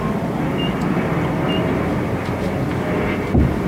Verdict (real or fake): real